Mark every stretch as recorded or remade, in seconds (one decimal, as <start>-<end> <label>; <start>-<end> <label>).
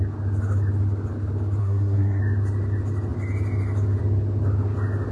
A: 0.0-1.6 recorded; 1.6-2.2 remade; 2.2-5.1 recorded